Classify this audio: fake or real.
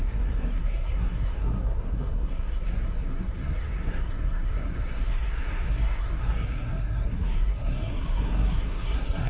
fake